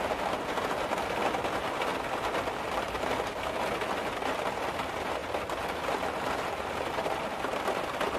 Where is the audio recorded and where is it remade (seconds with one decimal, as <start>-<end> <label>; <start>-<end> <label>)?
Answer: 0.0-8.2 recorded